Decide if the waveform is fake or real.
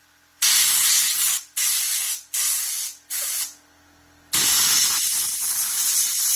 real